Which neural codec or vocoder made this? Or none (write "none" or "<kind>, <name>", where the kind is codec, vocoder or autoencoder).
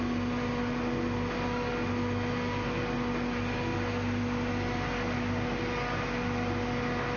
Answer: none